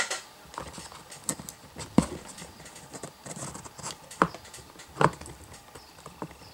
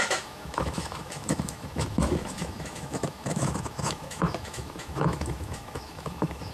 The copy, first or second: second